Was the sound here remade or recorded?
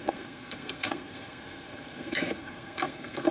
remade